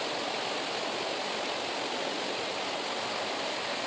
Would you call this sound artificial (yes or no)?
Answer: no